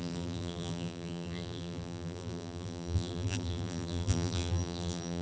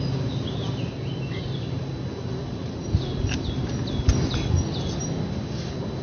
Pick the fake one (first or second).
first